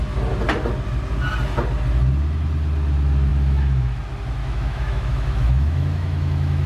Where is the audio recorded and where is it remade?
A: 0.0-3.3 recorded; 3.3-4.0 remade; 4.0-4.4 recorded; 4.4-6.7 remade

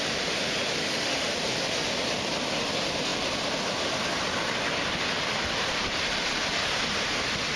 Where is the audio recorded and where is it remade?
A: 0.0-0.8 recorded; 0.8-1.3 remade; 1.3-7.6 recorded